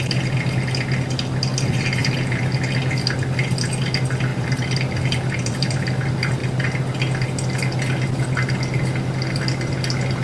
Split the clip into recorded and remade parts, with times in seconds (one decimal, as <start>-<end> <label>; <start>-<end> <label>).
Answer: 0.0-4.3 recorded; 4.3-5.7 remade; 5.7-10.2 recorded